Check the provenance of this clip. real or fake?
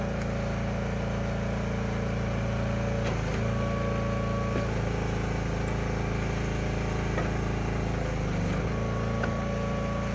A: real